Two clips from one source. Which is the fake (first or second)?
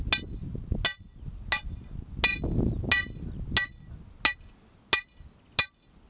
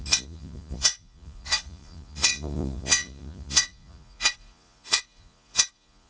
second